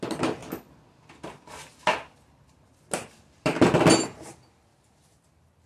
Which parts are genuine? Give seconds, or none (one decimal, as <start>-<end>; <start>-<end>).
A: 0.0-5.7